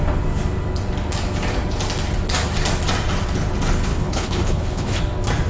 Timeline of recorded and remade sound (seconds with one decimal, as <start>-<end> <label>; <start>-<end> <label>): 0.0-3.9 recorded; 3.9-5.0 remade; 5.0-5.5 recorded